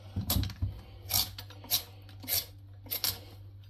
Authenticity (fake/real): real